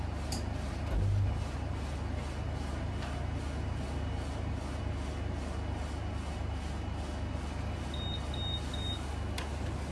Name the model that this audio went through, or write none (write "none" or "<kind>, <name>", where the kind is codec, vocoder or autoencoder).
none